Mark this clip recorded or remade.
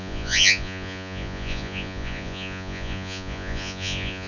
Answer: remade